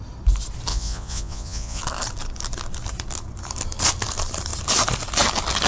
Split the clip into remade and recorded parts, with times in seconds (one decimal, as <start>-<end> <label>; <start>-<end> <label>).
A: 0.0-0.7 recorded; 0.7-1.8 remade; 1.8-5.7 recorded